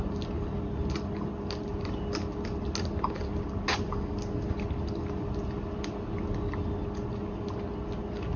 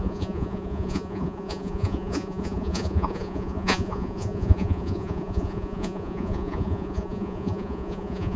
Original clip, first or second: first